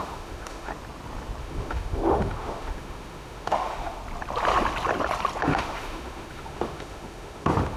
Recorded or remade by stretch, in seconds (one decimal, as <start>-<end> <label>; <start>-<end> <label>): 0.0-0.7 remade; 0.7-1.4 recorded; 1.4-4.0 remade; 4.0-5.4 recorded; 5.4-7.8 remade